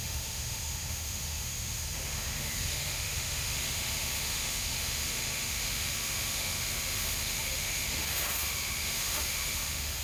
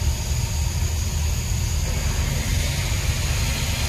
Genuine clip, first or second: second